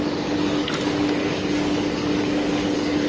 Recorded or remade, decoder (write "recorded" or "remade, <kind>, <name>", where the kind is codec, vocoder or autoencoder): remade, codec, DAC